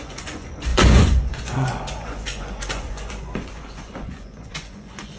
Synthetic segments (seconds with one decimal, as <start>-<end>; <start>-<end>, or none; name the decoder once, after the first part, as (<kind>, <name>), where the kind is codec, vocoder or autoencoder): 0.0-5.2 (vocoder, Vocos)